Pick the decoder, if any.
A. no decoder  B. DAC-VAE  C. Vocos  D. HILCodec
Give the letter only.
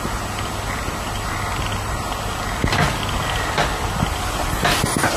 A